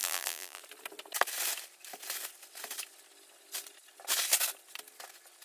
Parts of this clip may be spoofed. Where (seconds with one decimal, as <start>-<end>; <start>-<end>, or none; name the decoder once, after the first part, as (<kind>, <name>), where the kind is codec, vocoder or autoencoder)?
0.0-0.6 (vocoder, BigVGAN v2)